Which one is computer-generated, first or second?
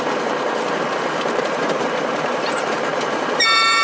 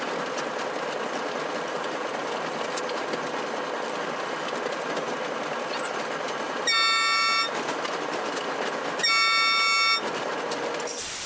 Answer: first